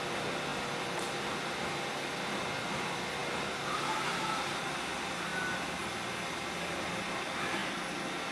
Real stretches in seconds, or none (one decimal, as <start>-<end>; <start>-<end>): 0.0-8.3